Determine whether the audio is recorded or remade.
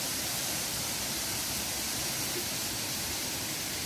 remade